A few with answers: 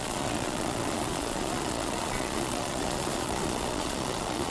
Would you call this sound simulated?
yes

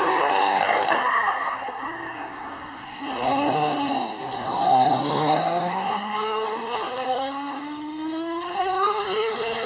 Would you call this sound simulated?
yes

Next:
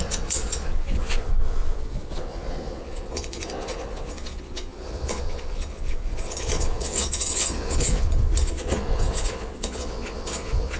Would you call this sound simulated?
yes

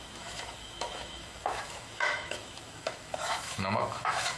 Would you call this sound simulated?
yes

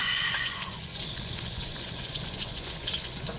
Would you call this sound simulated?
yes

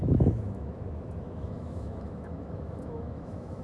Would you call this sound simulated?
yes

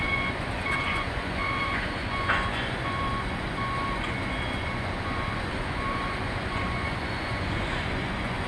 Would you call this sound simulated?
yes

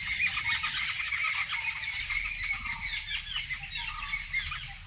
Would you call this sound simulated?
no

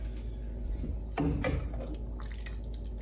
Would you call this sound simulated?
no